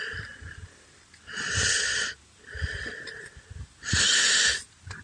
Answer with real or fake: real